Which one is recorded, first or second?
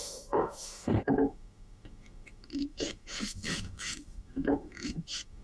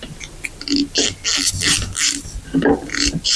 second